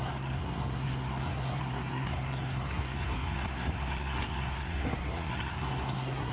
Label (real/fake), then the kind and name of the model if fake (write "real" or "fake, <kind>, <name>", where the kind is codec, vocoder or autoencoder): fake, codec, SNAC